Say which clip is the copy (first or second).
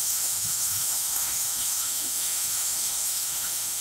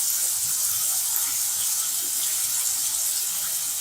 first